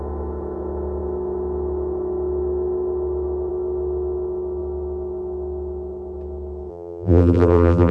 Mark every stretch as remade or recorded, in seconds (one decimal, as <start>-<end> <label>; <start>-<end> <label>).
0.0-6.7 recorded; 6.7-7.9 remade